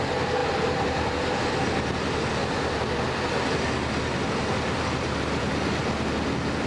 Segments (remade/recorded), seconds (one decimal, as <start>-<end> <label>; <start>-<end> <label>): 0.0-6.7 recorded